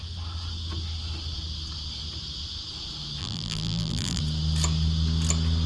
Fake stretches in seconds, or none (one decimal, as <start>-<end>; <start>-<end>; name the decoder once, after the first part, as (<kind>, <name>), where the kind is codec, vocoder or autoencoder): 3.2-4.2 (vocoder, BigVGAN v2)